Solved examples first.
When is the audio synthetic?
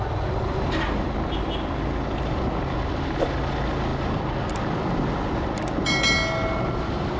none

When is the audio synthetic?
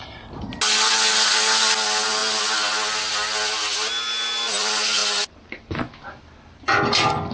none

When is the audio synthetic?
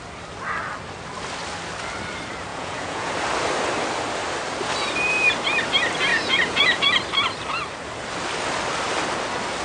2.5-3.1 (vocoder, Vocos); 6.1-6.8